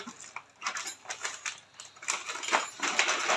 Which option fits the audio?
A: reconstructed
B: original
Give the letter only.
B